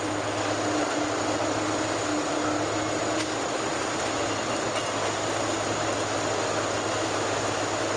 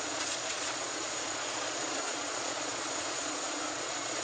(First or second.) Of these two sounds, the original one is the first